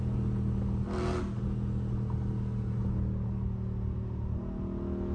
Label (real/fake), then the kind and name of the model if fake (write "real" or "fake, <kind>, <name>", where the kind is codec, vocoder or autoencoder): real